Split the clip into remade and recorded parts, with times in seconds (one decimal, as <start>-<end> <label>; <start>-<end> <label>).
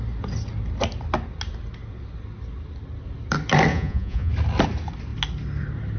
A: 0.0-3.7 recorded; 3.7-4.3 remade; 4.3-6.0 recorded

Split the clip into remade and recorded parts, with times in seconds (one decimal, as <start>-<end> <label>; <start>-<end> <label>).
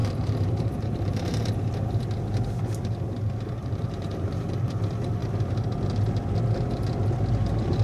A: 0.0-2.0 remade; 2.0-3.6 recorded; 3.6-4.4 remade; 4.4-5.2 recorded; 5.2-5.8 remade; 5.8-7.8 recorded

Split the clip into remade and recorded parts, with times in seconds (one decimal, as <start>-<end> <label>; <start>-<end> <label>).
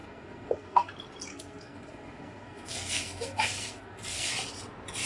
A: 0.0-0.9 remade; 0.9-1.3 recorded; 1.3-4.3 remade; 4.3-5.1 recorded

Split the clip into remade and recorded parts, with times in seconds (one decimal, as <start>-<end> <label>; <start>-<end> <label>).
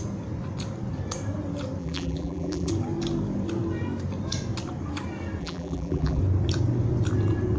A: 0.0-1.8 recorded; 1.8-2.7 remade; 2.7-5.4 recorded; 5.4-6.2 remade; 6.2-7.6 recorded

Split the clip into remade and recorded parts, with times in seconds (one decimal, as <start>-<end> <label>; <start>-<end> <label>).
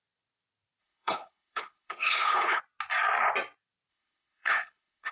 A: 0.0-0.8 recorded; 0.8-2.6 remade; 2.6-3.9 recorded; 3.9-5.1 remade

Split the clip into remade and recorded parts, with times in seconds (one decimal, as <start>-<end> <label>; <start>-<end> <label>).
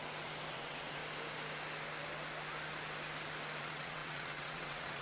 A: 0.0-0.5 recorded; 0.5-1.0 remade; 1.0-3.6 recorded; 3.6-5.0 remade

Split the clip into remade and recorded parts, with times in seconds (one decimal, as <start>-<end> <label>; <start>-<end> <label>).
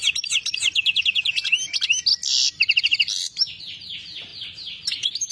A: 0.0-5.3 recorded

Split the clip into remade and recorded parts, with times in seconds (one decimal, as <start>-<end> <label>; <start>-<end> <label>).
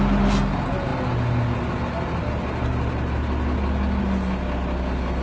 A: 0.0-5.2 recorded